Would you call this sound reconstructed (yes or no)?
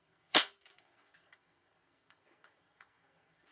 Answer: yes